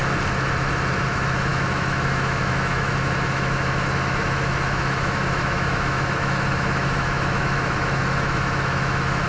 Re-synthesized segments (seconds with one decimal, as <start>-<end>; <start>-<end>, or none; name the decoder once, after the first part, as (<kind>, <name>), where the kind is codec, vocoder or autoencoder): 1.1-9.3 (autoencoder, DAC-VAE)